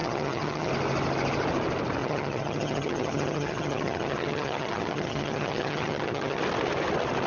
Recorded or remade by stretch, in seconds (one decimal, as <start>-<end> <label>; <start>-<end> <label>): 0.0-0.7 remade; 0.7-2.0 recorded; 2.0-6.4 remade; 6.4-7.3 recorded